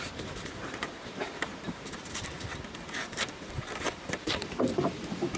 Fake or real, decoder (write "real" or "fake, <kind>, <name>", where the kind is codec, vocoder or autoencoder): fake, vocoder, BigVGAN v2